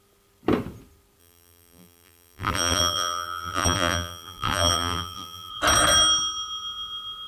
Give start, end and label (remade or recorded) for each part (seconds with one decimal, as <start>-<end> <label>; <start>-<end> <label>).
0.0-1.2 recorded; 1.2-5.5 remade; 5.5-7.3 recorded